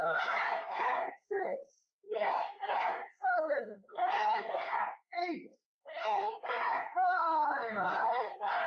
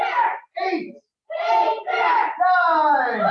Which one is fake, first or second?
first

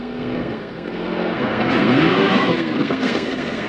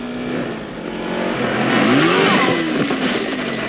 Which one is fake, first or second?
first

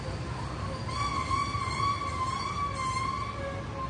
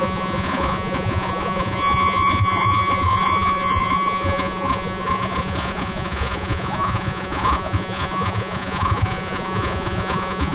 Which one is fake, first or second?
second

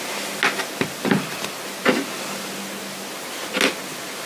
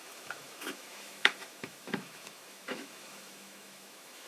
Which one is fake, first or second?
second